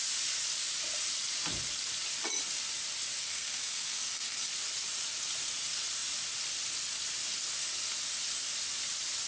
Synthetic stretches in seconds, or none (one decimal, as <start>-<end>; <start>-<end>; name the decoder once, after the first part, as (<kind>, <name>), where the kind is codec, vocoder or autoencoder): 3.2-4.5 (codec, SNAC)